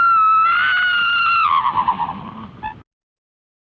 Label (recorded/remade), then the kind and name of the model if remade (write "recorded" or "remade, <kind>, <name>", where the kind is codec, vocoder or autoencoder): recorded